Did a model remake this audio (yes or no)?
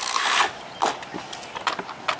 no